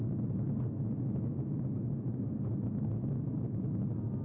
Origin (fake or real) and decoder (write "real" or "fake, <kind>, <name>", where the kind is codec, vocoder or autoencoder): real